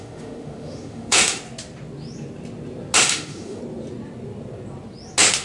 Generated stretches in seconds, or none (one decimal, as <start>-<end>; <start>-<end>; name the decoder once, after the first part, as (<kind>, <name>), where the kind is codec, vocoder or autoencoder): 0.0-1.4 (autoencoder, DAC-VAE); 3.0-3.6